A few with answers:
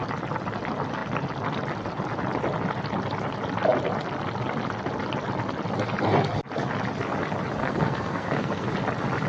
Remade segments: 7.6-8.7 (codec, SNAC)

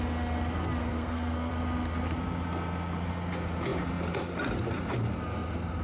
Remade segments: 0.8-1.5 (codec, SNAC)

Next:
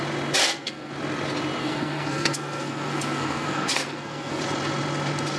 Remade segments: 0.4-0.9 (codec, SNAC); 1.6-4.4